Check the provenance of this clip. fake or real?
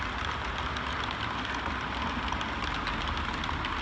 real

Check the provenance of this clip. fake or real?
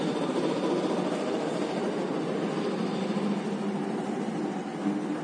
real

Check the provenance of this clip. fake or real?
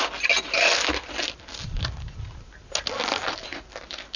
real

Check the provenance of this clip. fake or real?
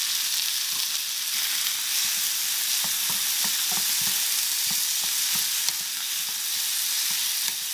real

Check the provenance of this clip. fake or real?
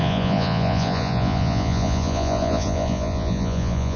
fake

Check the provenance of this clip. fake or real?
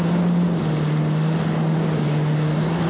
real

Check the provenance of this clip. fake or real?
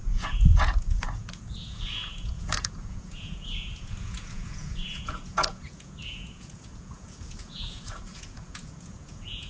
fake